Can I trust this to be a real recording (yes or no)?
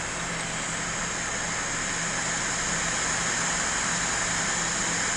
yes